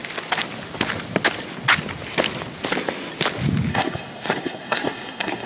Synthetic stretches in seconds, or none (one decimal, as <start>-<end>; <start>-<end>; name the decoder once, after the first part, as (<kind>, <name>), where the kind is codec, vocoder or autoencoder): 3.7-5.5 (codec, SNAC)